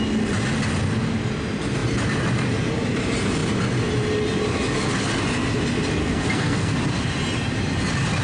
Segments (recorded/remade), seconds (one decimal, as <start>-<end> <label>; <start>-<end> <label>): 0.0-6.0 recorded; 6.0-6.7 remade; 6.7-8.2 recorded